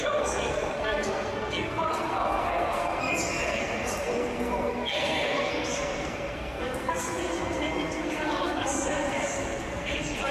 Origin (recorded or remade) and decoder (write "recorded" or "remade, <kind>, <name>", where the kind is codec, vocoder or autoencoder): remade, codec, SNAC